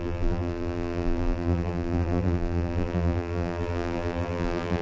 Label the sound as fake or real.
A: fake